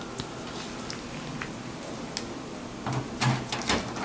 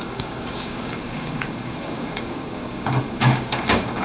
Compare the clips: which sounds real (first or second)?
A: first